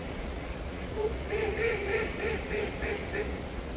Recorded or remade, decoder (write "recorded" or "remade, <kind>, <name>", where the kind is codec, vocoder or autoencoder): remade, vocoder, Vocos